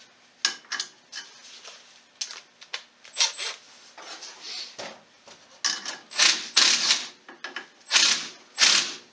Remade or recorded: recorded